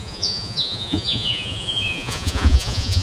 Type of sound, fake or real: fake